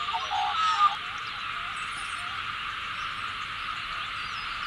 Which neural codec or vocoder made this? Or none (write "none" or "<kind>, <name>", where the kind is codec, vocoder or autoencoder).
none